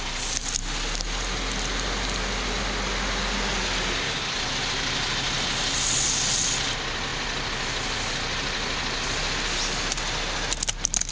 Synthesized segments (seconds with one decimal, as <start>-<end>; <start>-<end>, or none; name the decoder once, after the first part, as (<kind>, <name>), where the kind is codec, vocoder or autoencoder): none

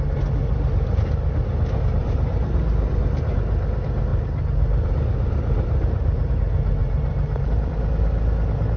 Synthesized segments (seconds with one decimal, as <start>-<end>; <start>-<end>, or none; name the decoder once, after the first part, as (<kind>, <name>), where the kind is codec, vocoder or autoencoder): 0.4-1.3 (vocoder, BigVGAN v2); 2.0-2.9; 4.1-6.3; 6.8-7.7

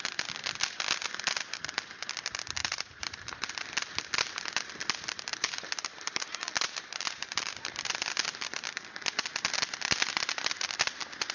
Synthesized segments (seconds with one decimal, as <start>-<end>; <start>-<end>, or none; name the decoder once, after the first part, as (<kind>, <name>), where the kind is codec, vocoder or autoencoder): 2.6-3.5 (vocoder, BigVGAN v2); 5.3-7.9

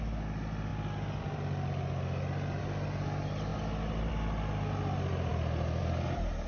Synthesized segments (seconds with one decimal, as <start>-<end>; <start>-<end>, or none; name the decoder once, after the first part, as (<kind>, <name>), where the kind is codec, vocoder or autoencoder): none

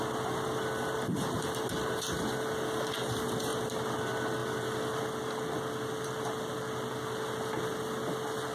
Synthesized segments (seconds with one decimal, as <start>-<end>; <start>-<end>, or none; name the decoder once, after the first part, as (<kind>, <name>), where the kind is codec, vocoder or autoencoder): 4.4-5.0 (vocoder, BigVGAN v2)

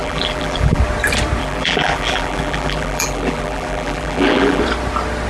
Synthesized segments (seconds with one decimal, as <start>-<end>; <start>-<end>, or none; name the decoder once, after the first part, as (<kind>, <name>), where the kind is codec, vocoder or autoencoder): 0.0-0.8 (vocoder, BigVGAN v2); 1.4-4.6

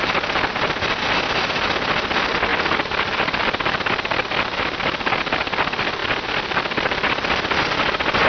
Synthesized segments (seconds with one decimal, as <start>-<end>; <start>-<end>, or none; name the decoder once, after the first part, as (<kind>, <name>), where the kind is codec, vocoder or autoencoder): 2.5-3.9 (vocoder, BigVGAN v2)

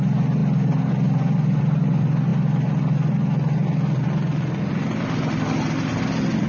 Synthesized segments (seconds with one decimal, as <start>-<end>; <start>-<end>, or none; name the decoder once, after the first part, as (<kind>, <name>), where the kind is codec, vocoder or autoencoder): none